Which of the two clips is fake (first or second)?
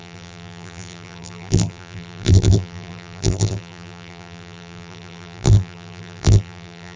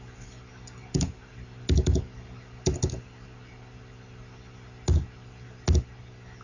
first